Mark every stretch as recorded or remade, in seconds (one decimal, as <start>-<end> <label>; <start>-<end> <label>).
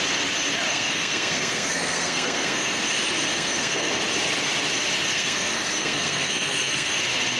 0.0-0.7 recorded; 0.7-2.8 remade; 2.8-3.3 recorded; 3.3-3.9 remade; 3.9-5.1 recorded; 5.1-7.0 remade; 7.0-7.4 recorded